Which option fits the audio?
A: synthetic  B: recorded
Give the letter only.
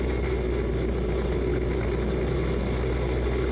B